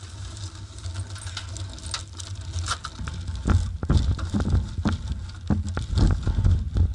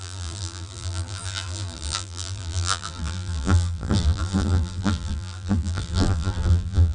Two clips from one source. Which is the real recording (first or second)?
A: first